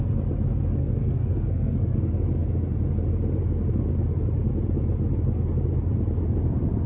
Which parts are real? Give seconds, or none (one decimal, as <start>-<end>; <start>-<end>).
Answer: 0.0-0.8; 2.0-6.9